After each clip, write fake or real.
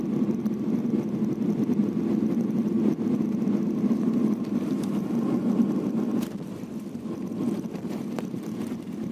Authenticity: real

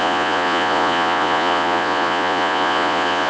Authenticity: fake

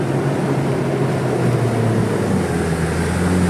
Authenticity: real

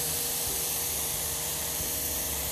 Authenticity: fake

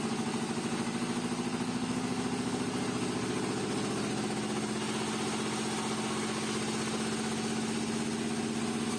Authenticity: real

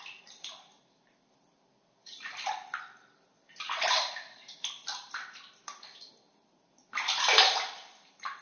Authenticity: fake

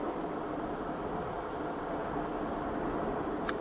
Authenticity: real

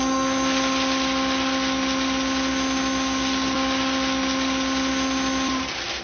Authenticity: real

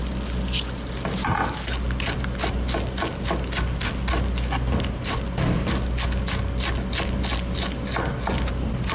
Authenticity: real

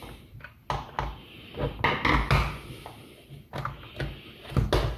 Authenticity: real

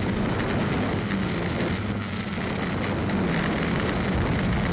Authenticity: real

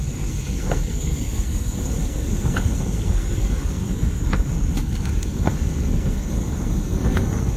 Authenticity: fake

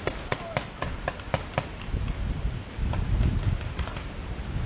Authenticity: real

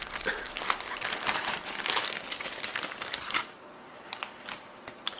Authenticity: fake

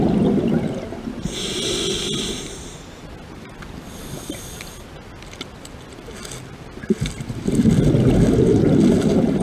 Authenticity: real